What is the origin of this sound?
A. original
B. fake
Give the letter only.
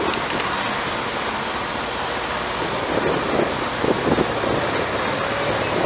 A